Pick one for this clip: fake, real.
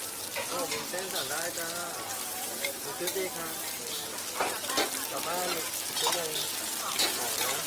real